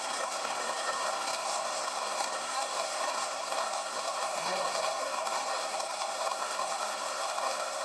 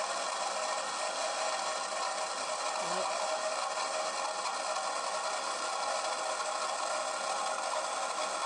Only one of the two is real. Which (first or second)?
second